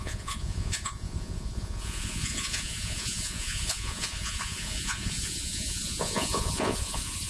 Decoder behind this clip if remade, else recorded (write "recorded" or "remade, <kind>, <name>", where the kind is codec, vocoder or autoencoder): remade, vocoder, Vocos